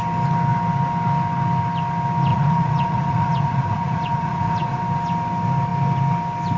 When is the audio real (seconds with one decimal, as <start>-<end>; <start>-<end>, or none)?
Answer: 0.0-2.3; 4.8-6.6